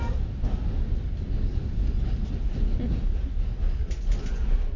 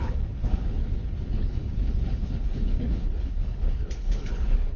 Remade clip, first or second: second